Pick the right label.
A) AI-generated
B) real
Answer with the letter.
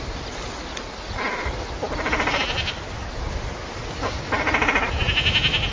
B